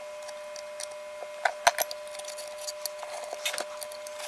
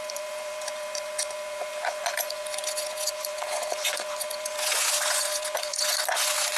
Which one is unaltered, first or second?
first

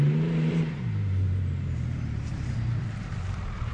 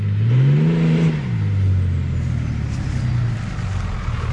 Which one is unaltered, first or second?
second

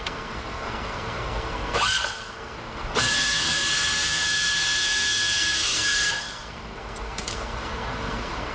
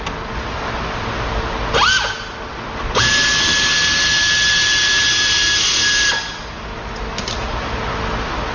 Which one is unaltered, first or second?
second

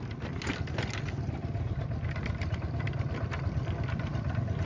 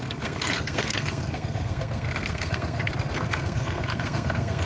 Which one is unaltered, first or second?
first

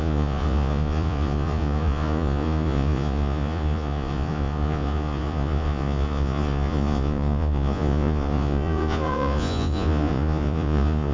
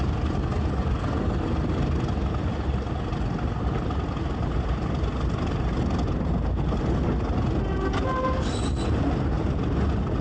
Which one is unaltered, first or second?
second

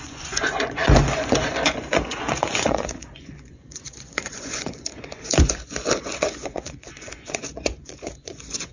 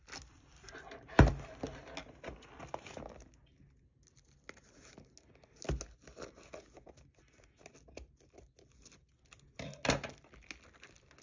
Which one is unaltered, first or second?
second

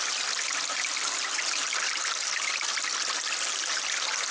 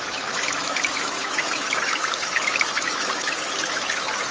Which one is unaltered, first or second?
first